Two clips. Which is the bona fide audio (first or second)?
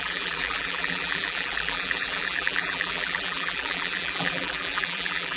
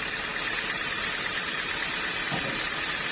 second